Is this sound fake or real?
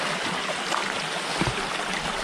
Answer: real